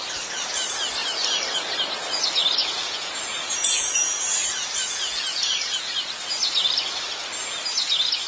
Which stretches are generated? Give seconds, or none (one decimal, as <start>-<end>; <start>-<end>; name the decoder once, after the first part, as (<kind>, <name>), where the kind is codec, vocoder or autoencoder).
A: 2.6-5.9 (vocoder, Vocos)